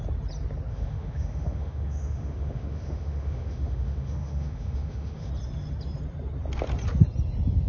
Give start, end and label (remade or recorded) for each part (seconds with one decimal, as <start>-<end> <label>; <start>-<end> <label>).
0.0-0.7 recorded; 0.7-5.3 remade; 5.3-7.7 recorded